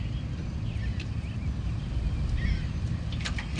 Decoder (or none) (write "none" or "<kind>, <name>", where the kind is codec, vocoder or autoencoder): none